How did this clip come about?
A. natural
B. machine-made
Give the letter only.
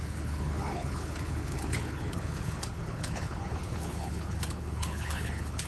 B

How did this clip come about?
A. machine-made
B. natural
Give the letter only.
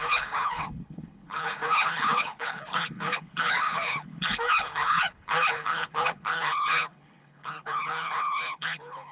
A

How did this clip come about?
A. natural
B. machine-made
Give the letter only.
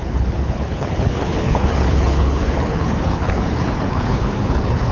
B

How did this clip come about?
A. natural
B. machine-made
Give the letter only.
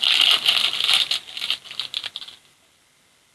A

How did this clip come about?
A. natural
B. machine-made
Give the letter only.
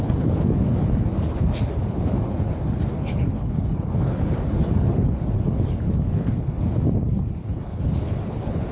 B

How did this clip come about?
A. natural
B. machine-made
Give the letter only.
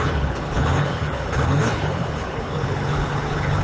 B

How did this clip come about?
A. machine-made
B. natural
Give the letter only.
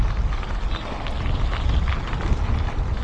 B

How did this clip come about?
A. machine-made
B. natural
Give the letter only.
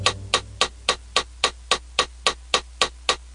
B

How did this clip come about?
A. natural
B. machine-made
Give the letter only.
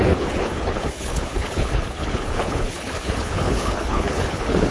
B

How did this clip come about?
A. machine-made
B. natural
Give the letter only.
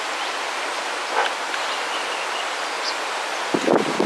B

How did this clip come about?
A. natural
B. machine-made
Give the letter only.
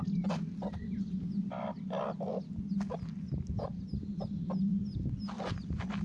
A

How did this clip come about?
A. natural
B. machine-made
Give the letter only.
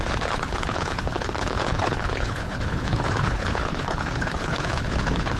B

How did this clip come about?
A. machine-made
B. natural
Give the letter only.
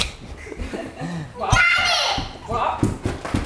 B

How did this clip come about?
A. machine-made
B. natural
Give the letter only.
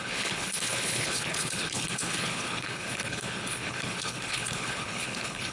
A